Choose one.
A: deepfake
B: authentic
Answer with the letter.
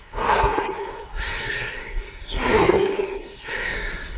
A